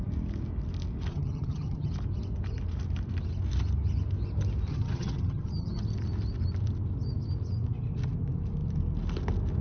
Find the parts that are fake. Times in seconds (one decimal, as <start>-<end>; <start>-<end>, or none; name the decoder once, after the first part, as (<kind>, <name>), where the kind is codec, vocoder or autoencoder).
1.1-1.9 (vocoder, HiFi-GAN); 4.7-5.8